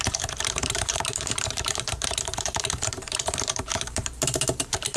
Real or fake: fake